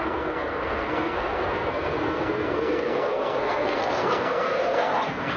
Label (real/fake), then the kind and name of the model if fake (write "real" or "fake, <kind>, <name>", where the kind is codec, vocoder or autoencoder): fake, codec, SNAC